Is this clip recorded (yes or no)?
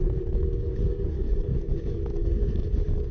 no